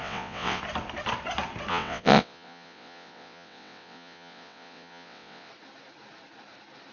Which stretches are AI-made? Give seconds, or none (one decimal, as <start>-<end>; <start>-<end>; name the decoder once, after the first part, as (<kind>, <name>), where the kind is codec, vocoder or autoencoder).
0.0-0.6 (vocoder, WaveNeXt); 1.7-5.5